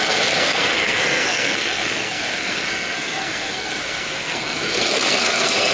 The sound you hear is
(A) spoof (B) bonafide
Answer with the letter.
A